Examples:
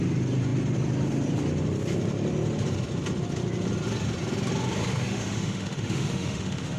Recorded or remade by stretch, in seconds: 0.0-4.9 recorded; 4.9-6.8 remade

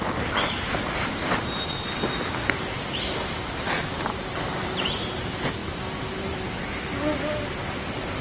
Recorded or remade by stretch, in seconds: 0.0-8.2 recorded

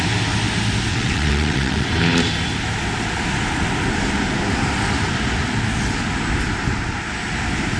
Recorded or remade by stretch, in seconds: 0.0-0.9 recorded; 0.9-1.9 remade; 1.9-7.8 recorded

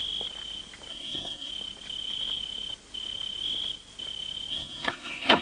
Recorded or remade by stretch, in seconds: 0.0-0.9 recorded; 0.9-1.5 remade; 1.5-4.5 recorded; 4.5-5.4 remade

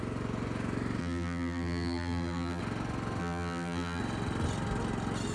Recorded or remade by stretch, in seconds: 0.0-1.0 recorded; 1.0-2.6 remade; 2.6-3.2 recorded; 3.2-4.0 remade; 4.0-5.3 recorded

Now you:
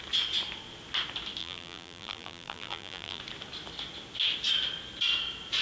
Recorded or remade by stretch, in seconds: 0.0-1.4 recorded; 1.4-3.2 remade; 3.2-5.6 recorded

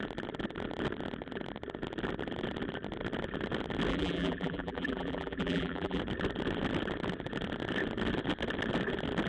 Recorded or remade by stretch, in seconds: 0.0-3.9 recorded; 3.9-6.0 remade; 6.0-9.3 recorded

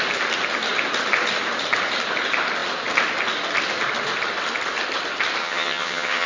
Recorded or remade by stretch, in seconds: 0.0-5.4 recorded; 5.4-6.3 remade